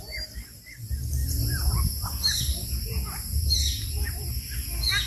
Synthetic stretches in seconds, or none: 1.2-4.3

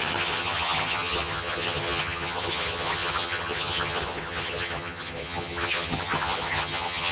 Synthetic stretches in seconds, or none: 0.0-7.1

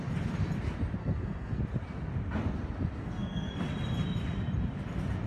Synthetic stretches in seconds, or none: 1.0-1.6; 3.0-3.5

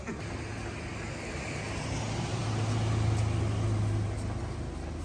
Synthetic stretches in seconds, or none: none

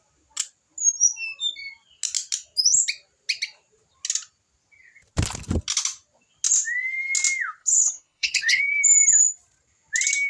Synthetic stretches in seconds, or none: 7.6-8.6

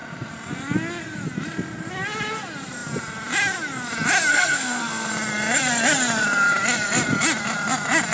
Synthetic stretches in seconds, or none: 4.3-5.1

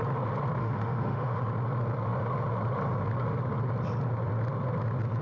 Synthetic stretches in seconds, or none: 0.6-1.4